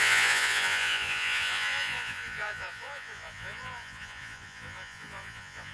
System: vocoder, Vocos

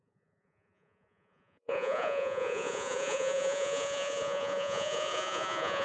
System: vocoder, Vocos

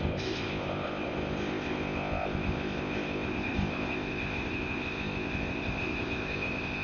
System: codec, ZipCodec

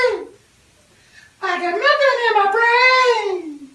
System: none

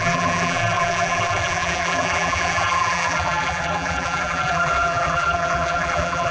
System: vocoder, BigVGAN v2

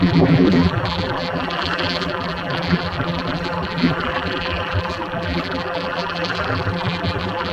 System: vocoder, BigVGAN v2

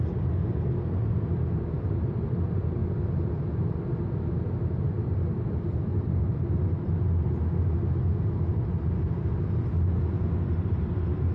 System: none